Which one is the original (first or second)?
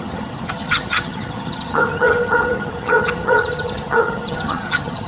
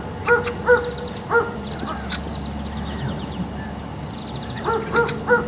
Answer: second